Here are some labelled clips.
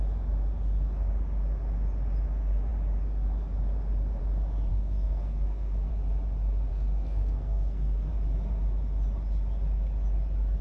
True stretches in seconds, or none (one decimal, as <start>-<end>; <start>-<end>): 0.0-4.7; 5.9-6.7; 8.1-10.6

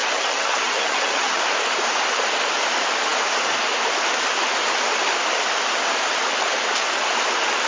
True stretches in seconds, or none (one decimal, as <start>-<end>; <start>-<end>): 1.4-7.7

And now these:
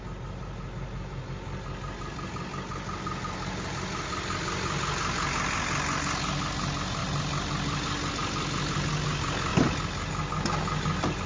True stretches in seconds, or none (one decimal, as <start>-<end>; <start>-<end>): 0.0-11.3

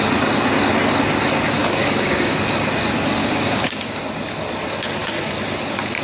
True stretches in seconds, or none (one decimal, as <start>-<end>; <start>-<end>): 0.0-1.6; 2.4-3.2; 4.0-6.0